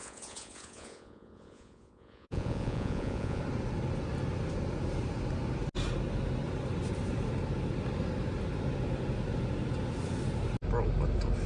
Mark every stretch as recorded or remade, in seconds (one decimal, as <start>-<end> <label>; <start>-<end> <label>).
0.0-3.4 remade; 3.4-11.5 recorded